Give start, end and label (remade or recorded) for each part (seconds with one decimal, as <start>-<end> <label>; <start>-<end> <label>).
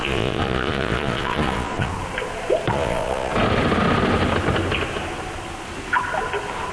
0.0-1.9 remade; 1.9-2.7 recorded; 2.7-3.3 remade; 3.3-6.7 recorded